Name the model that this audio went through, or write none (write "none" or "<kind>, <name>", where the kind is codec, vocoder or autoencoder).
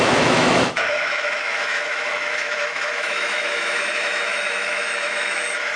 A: autoencoder, DAC-VAE